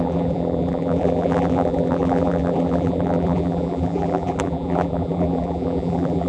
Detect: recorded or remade remade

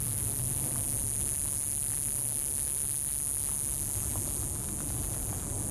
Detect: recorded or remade recorded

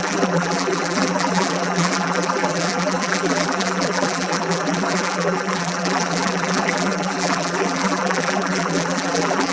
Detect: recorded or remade remade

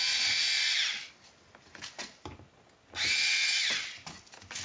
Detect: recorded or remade recorded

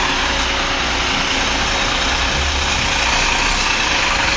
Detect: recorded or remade recorded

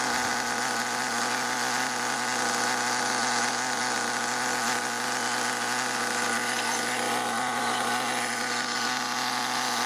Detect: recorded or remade recorded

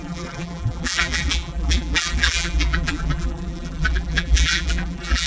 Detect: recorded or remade remade